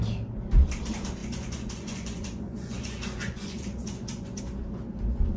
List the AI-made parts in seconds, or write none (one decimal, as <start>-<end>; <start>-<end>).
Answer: 1.2-4.4